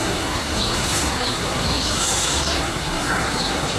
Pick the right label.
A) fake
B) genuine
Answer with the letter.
A